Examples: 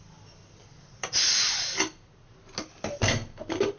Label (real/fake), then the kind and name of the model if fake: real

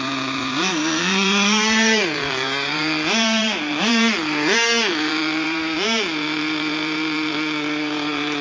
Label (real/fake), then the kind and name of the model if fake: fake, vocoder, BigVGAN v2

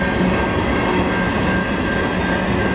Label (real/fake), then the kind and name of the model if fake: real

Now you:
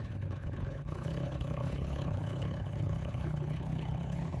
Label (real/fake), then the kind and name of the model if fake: fake, codec, HILCodec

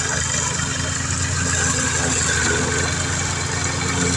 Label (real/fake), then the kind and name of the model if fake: real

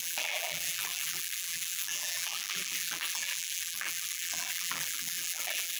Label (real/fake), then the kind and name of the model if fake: fake, vocoder, BigVGAN v2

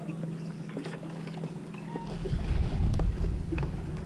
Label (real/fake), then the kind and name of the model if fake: fake, codec, DAC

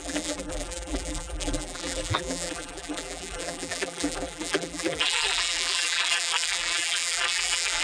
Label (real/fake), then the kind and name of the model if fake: fake, vocoder, BigVGAN v2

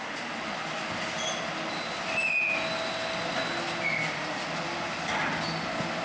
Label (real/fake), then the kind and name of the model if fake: real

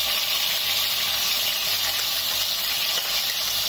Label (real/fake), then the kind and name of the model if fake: real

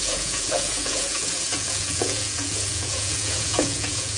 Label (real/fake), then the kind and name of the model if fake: fake, vocoder, Vocos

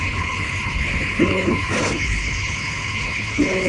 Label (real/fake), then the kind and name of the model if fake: fake, codec, HILCodec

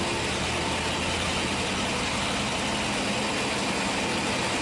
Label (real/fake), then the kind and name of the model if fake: real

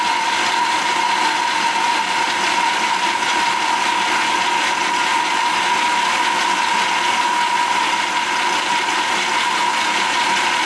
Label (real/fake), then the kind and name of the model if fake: real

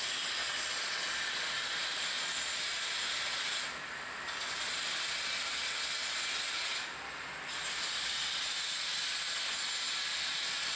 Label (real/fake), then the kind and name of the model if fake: real